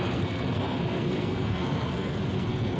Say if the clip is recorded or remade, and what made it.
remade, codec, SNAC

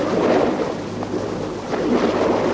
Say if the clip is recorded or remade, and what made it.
recorded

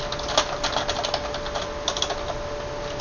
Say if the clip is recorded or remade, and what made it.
recorded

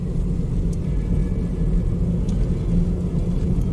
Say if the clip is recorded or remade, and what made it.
recorded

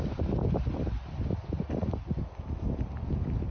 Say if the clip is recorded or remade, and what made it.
recorded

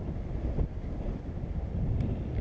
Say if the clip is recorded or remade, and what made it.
recorded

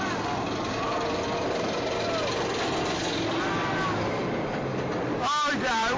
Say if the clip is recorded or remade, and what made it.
recorded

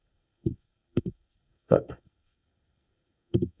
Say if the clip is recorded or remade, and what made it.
remade, codec, SNAC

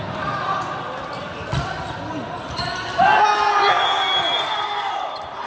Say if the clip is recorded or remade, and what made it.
recorded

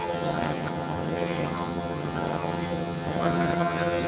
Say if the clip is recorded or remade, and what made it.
remade, vocoder, HiFi-GAN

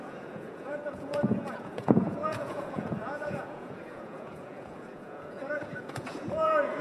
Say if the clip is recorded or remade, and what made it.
remade, vocoder, Vocos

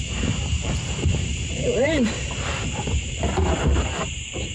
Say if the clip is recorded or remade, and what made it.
remade, vocoder, BigVGAN v2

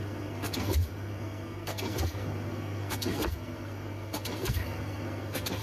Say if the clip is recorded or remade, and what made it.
remade, codec, SNAC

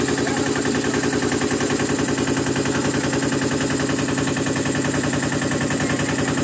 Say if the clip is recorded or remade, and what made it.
recorded